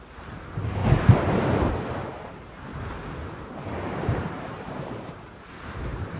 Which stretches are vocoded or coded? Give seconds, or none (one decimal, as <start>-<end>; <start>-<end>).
0.0-0.8; 1.9-2.7; 3.5-6.2